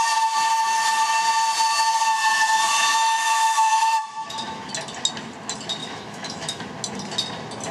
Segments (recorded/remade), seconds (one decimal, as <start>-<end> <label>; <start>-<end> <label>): 0.0-2.9 recorded; 2.9-4.7 remade; 4.7-5.8 recorded; 5.8-6.6 remade; 6.6-7.7 recorded